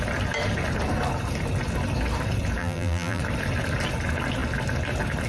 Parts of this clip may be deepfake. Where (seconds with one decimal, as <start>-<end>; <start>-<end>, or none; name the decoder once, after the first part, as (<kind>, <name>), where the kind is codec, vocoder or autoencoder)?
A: 2.6-3.2 (vocoder, BigVGAN v2)